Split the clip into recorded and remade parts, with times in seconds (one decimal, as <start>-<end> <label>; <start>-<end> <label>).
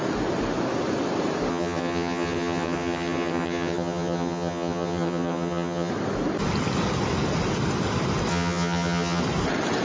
0.0-1.5 recorded; 1.5-5.9 remade; 5.9-8.3 recorded; 8.3-9.2 remade; 9.2-9.8 recorded